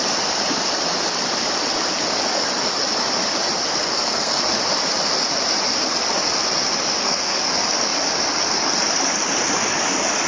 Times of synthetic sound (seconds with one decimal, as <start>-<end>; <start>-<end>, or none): 3.8-4.4; 7.0-7.5